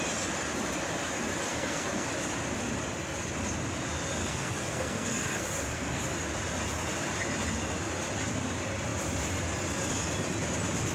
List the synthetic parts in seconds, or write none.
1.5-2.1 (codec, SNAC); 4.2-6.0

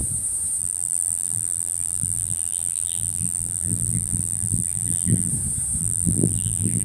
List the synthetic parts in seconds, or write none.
0.6-5.3 (vocoder, BigVGAN v2); 5.8-6.8

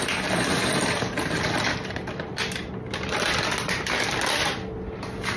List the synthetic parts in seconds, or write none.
none

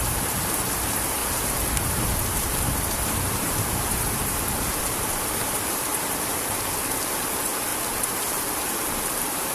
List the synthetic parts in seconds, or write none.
0.0-9.5 (vocoder, BigVGAN v2)

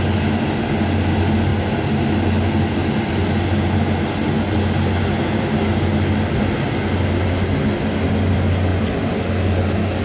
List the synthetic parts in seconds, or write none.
none

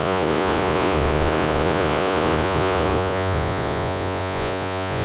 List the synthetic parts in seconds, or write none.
0.0-5.0 (vocoder, Vocos)